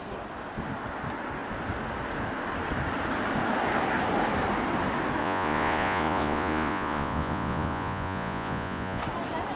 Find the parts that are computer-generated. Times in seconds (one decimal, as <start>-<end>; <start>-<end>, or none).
5.2-9.0